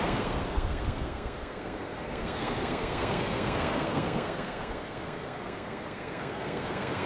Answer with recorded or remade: remade